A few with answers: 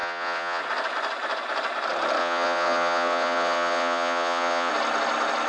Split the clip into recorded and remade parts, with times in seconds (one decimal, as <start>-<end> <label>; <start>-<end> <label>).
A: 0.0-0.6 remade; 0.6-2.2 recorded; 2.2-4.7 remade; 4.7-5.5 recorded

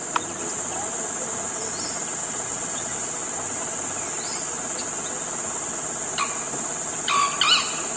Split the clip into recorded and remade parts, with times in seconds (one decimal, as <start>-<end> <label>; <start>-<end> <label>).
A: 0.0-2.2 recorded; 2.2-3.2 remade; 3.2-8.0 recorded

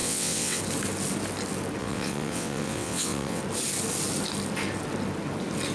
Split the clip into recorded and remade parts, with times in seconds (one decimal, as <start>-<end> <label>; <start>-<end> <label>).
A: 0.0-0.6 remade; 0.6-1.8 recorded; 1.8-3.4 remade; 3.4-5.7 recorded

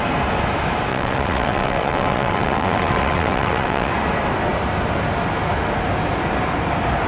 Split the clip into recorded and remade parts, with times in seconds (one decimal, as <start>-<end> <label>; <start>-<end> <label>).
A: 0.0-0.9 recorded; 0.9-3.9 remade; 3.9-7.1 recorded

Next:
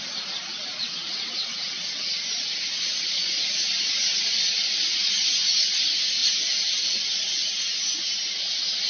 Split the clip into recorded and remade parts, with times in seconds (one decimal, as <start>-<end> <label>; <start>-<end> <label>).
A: 0.0-0.8 recorded; 0.8-2.2 remade; 2.2-8.9 recorded